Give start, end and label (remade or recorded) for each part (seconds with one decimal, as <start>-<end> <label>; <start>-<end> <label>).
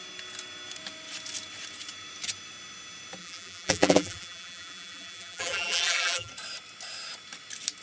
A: 0.0-3.2 recorded; 3.2-6.3 remade; 6.3-7.8 recorded